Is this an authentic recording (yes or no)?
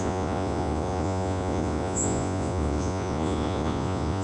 no